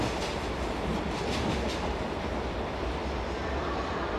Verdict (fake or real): real